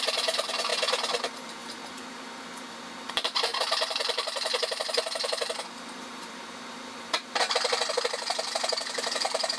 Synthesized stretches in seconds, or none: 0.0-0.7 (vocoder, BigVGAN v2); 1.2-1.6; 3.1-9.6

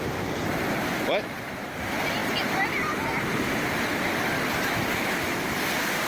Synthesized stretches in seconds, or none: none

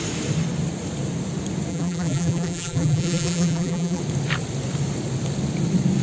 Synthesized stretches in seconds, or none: 1.7-4.0 (vocoder, BigVGAN v2)

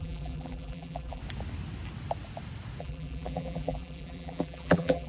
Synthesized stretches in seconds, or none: 0.0-1.2 (vocoder, BigVGAN v2); 2.8-5.1